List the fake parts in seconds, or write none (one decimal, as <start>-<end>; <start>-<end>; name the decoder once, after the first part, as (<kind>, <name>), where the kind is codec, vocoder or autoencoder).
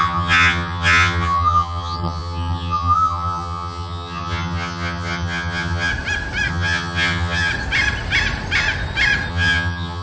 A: 0.0-5.9 (vocoder, HiFi-GAN); 6.5-7.5; 9.3-10.0